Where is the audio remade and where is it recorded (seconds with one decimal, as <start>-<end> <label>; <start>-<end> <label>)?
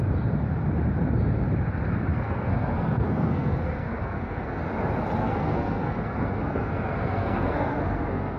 0.0-2.1 recorded; 2.1-4.6 remade; 4.6-5.2 recorded; 5.2-8.4 remade